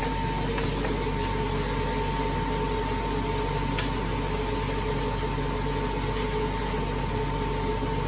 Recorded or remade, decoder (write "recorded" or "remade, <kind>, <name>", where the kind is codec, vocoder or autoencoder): recorded